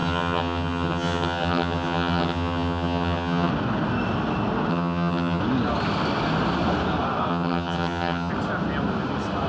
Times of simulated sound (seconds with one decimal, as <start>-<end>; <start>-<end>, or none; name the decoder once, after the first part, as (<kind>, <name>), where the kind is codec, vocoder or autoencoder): 0.0-3.5 (vocoder, HiFi-GAN); 4.7-5.4; 7.3-8.3